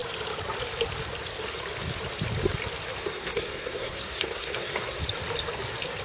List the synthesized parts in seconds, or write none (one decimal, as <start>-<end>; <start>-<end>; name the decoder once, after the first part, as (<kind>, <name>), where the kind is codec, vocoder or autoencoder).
3.0-5.0 (codec, SNAC)

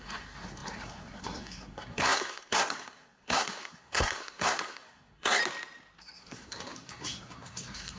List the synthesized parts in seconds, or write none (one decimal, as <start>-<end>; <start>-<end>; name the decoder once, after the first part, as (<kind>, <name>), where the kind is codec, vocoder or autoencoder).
0.0-5.4 (codec, SNAC); 6.0-8.0

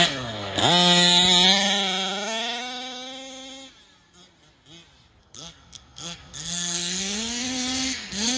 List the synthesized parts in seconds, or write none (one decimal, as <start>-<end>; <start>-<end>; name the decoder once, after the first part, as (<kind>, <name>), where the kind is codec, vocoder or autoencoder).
0.0-0.6 (codec, SNAC); 5.2-8.4

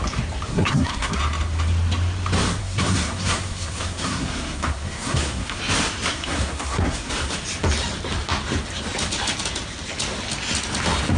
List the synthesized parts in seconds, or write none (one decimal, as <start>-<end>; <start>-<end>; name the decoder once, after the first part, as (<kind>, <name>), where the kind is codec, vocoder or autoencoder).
0.5-1.2 (codec, SNAC); 2.6-5.6; 6.1-7.1